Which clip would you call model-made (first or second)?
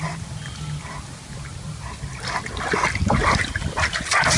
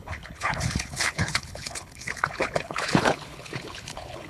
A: second